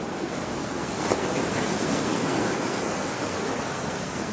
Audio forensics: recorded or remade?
remade